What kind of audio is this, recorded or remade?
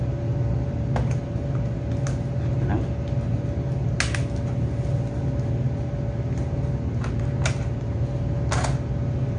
recorded